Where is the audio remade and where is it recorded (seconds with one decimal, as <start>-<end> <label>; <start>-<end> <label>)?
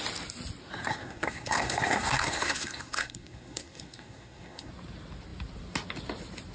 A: 0.0-0.8 recorded; 0.8-4.7 remade; 4.7-6.5 recorded